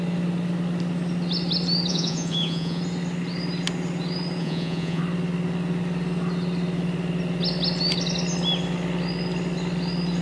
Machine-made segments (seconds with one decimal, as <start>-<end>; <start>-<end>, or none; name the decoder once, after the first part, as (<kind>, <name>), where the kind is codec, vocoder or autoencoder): 1.9-2.8 (vocoder, Vocos); 4.4-5.0